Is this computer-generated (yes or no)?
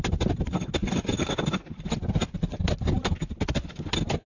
no